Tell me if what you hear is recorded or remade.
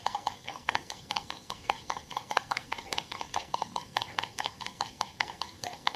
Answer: remade